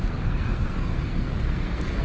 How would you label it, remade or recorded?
remade